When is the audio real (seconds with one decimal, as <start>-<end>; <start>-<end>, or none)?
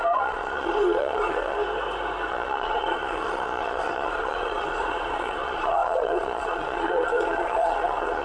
1.6-2.3